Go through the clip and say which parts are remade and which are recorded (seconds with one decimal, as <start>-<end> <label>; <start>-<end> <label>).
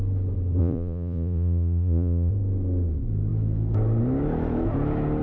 0.0-0.6 recorded; 0.6-2.3 remade; 2.3-5.2 recorded